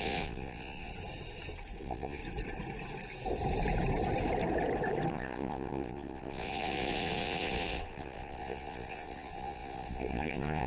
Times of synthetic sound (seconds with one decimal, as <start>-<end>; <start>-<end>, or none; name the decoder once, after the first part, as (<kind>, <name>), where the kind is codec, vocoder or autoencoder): 0.0-0.9 (vocoder, Vocos); 1.8-2.2; 5.1-10.7